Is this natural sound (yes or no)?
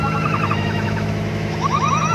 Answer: no